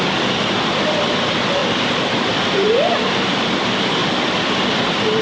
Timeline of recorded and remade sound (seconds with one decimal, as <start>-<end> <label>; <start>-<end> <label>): 0.0-1.6 recorded; 1.6-3.5 remade; 3.5-5.2 recorded